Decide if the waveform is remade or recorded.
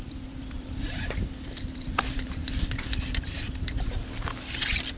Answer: remade